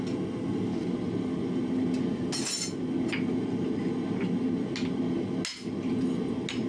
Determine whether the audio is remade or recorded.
recorded